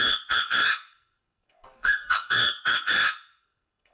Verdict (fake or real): fake